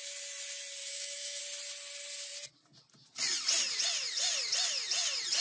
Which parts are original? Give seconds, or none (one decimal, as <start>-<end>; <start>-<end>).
0.0-0.8; 1.4-5.4

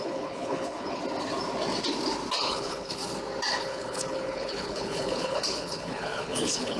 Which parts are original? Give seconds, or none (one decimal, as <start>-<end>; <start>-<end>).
1.0-2.4; 3.0-3.5

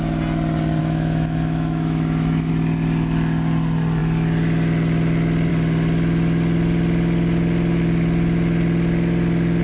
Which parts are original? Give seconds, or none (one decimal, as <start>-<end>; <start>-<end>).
0.0-0.8; 2.5-9.6

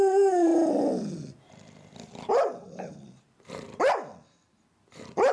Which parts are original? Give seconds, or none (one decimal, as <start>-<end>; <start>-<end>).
0.5-2.3; 4.1-5.3